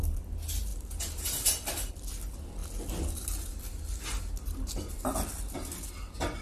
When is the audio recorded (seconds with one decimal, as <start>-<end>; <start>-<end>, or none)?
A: 0.0-6.4